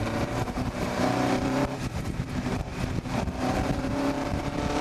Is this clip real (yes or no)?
no